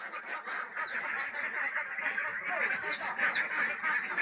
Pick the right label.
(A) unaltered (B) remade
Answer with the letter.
A